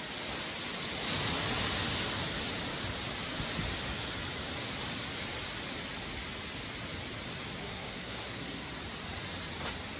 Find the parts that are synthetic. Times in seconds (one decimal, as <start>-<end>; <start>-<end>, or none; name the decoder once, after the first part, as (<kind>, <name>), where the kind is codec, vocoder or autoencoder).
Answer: 7.6-8.7 (codec, SNAC)